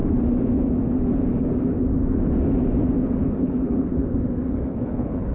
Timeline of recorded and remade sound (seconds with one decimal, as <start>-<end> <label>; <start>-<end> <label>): 0.0-3.2 recorded; 3.2-3.9 remade; 3.9-4.5 recorded; 4.5-5.3 remade